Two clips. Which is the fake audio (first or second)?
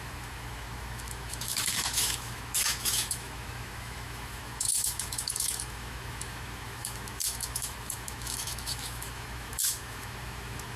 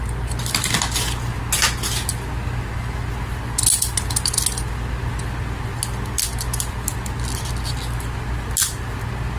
first